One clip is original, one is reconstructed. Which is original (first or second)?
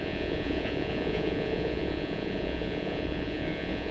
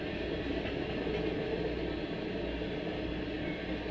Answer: second